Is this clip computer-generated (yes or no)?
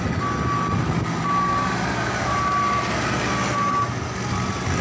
no